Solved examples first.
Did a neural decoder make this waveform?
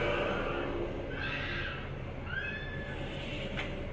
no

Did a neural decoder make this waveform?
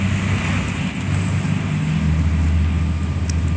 no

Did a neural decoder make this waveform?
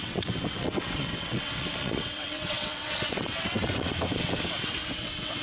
yes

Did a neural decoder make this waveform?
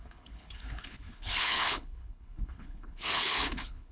yes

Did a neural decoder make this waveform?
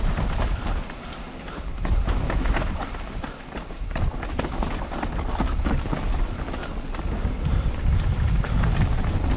no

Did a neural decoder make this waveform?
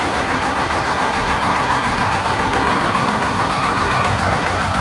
yes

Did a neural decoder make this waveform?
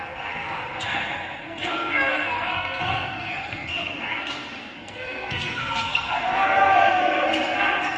yes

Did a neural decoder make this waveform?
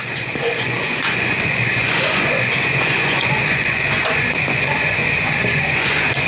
yes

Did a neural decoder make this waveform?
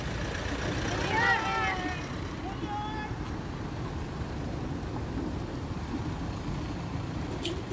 no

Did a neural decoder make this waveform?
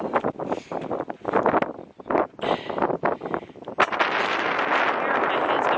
no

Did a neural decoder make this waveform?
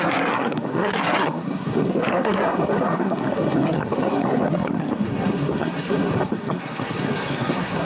yes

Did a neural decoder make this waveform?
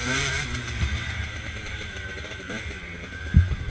yes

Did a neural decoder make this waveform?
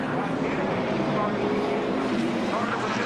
yes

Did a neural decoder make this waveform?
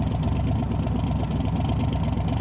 no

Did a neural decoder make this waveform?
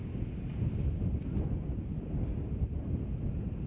no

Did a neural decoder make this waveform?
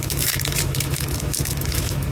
yes